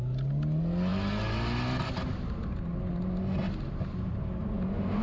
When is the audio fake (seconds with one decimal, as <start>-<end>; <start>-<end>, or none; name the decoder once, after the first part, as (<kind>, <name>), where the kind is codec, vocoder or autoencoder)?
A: none